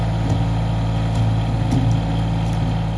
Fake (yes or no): no